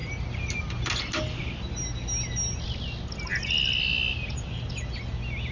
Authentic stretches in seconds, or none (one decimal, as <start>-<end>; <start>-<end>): 0.0-5.5